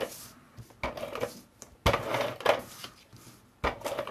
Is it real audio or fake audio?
real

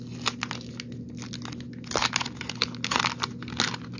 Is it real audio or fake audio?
real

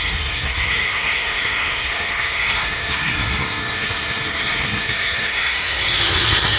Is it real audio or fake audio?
fake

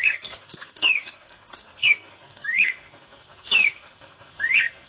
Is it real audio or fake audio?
fake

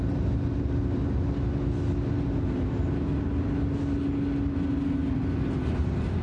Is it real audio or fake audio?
real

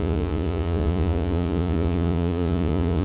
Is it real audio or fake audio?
fake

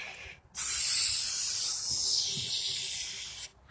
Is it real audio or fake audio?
real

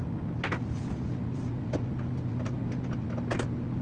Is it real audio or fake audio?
real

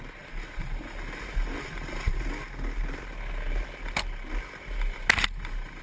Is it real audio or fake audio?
real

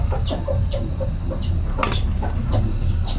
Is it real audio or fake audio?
real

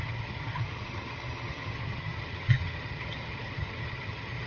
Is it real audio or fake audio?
fake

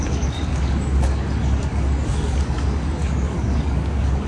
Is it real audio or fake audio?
fake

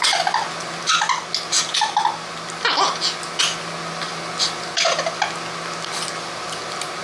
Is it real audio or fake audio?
real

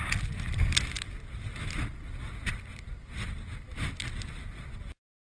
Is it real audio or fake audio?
real